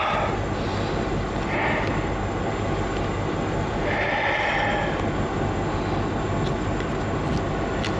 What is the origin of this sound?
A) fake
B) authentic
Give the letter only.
B